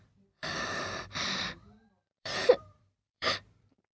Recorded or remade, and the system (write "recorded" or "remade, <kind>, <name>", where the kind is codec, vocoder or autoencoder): remade, vocoder, BigVGAN v2